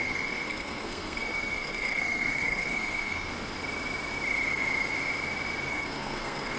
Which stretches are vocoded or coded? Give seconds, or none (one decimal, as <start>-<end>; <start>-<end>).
0.0-3.3; 5.7-6.6